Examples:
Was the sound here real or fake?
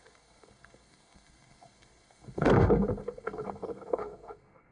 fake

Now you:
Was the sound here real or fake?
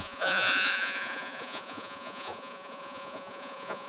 fake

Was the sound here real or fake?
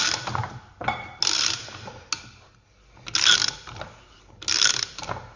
real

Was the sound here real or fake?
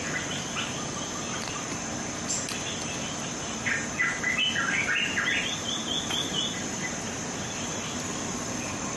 real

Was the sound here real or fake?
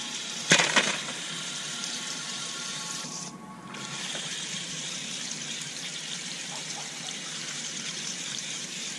fake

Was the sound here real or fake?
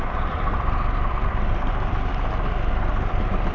fake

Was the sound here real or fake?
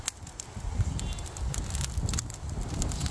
real